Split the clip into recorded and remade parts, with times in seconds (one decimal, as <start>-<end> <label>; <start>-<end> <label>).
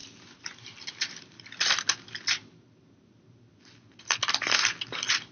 0.0-5.3 recorded